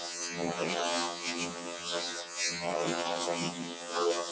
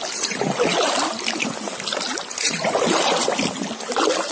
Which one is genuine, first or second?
second